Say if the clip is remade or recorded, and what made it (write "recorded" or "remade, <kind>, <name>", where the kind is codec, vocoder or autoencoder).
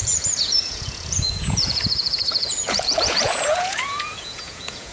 remade, vocoder, Vocos